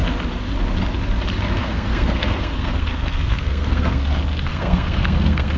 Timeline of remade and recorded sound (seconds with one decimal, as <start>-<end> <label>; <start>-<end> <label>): 0.0-1.6 recorded; 1.6-4.0 remade; 4.0-4.5 recorded; 4.5-5.6 remade